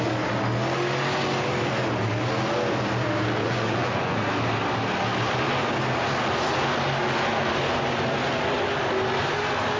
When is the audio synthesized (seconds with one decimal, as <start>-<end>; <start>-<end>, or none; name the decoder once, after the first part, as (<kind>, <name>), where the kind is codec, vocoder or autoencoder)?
3.4-4.3 (vocoder, Vocos)